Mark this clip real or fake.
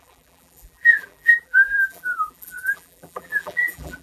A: fake